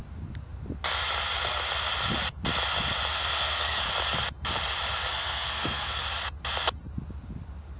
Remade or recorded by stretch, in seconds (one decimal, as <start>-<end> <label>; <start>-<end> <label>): 0.0-3.1 recorded; 3.1-3.8 remade; 3.8-5.1 recorded; 5.1-6.0 remade; 6.0-7.8 recorded